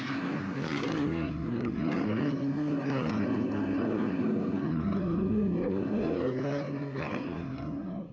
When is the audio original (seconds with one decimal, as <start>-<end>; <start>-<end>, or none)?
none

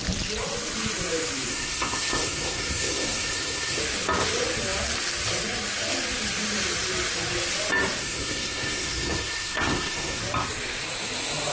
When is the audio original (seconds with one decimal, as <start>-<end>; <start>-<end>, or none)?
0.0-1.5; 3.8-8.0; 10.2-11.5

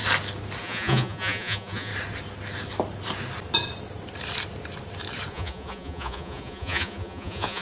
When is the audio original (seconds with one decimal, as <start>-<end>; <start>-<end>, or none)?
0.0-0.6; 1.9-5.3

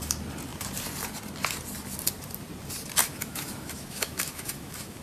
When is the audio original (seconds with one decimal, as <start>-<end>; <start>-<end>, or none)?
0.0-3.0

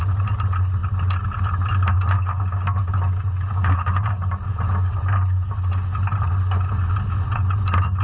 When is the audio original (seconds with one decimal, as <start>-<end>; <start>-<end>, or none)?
0.0-8.0

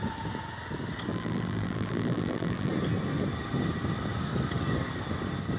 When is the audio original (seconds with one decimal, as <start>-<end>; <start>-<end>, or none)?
0.0-1.1; 2.7-5.6

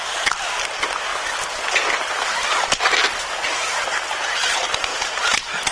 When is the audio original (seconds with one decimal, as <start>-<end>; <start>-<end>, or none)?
0.0-4.9